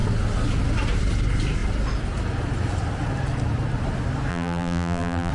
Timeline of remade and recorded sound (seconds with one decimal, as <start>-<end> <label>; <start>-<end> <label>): 0.0-4.3 recorded; 4.3-5.3 remade